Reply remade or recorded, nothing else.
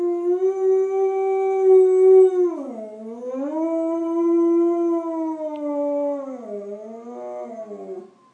recorded